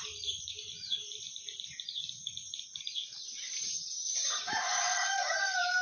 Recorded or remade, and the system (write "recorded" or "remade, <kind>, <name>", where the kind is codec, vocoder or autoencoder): remade, vocoder, BigVGAN v2